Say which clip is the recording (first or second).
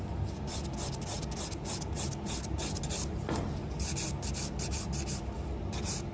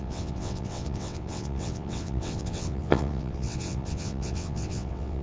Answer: first